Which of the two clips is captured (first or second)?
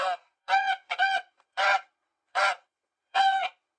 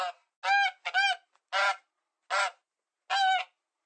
second